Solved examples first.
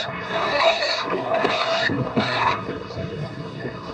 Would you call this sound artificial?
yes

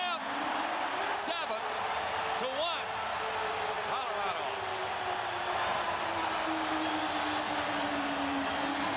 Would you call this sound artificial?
no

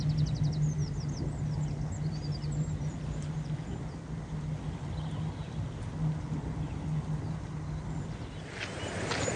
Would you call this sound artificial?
no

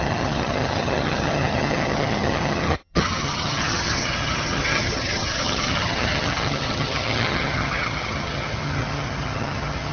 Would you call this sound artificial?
yes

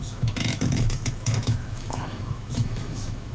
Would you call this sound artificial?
yes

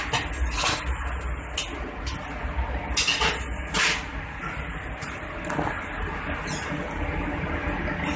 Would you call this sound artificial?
no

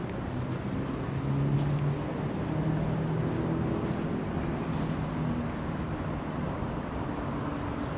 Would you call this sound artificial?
no